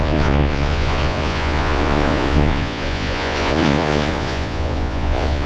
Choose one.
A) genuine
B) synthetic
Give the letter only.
B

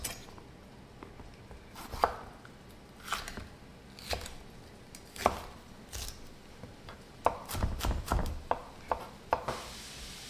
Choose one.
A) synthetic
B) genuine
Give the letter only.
B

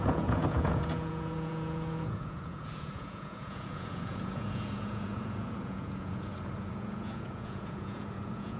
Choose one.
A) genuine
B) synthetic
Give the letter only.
B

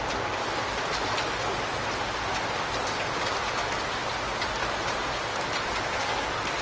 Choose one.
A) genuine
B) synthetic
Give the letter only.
A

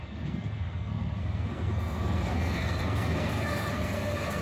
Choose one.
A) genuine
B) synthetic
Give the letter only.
B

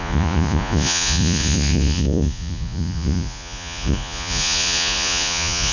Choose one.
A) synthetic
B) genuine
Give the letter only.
A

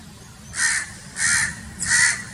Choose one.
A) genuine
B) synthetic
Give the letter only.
A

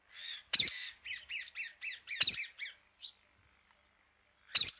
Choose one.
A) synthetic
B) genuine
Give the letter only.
B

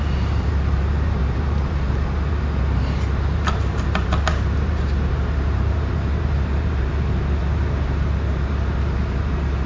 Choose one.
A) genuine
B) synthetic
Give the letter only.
B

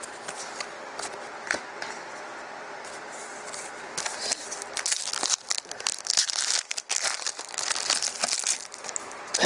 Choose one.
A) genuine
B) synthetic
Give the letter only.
A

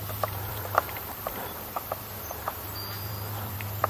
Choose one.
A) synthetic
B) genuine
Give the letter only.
A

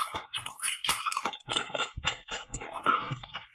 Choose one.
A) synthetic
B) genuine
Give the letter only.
A